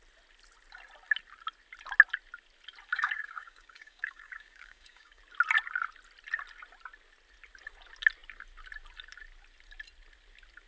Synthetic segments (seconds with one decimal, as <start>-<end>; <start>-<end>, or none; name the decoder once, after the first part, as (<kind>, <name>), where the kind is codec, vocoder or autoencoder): 2.9-5.2 (codec, DAC)

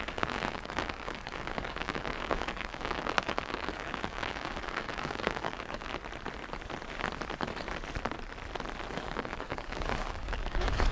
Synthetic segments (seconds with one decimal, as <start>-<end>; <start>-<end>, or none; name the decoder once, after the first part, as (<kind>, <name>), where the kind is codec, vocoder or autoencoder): 0.0-5.9 (codec, DAC); 8.9-10.9

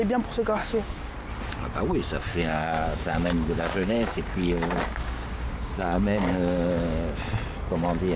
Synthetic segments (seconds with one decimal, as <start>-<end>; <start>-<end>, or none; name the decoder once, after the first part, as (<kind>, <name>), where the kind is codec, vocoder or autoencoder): 0.6-1.1 (codec, DAC); 2.3-7.2

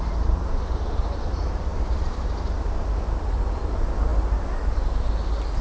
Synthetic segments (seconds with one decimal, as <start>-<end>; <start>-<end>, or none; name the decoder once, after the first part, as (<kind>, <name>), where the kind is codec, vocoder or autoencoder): none

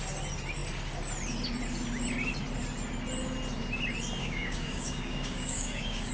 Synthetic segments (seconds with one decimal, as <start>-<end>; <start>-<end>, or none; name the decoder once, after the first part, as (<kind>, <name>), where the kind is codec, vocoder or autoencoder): 4.2-6.1 (codec, DAC)

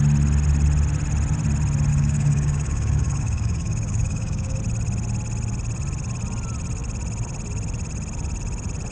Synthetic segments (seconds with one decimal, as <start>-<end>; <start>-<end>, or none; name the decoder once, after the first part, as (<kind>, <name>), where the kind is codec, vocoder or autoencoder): 1.9-4.6 (codec, DAC)

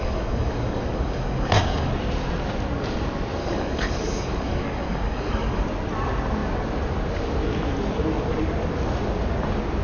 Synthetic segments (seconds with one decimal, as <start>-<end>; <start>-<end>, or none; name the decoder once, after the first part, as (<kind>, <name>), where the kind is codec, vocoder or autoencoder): 0.0-1.9 (codec, DAC); 3.4-5.6